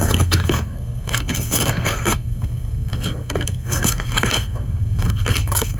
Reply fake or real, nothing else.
fake